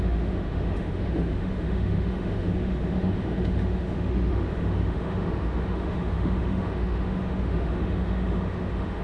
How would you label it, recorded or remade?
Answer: remade